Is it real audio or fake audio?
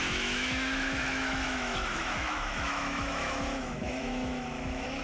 fake